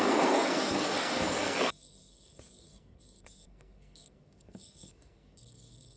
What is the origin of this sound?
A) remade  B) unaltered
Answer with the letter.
A